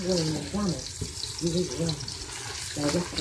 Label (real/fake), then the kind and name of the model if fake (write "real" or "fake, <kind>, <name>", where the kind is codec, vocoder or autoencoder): real